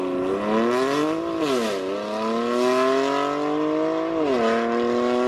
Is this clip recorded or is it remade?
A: recorded